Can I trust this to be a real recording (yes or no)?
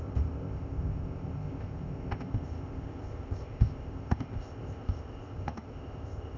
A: no